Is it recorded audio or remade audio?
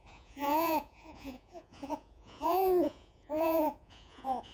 remade